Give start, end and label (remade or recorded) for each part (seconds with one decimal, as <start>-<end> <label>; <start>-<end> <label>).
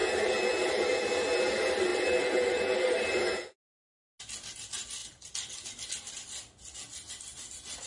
0.0-7.9 recorded